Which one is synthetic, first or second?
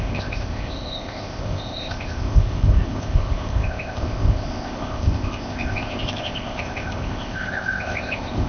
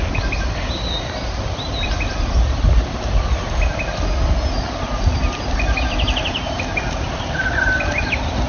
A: first